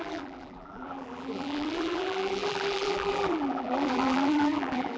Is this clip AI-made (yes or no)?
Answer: yes